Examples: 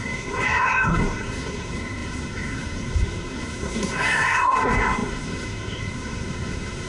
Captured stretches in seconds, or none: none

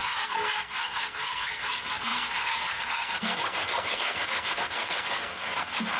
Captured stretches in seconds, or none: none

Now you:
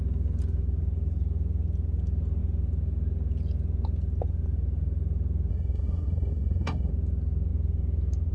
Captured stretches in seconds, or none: 0.0-5.5; 6.9-8.3